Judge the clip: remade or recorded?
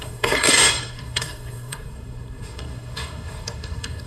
remade